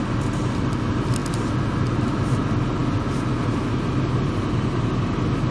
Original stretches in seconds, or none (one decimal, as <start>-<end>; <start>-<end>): 0.0-5.5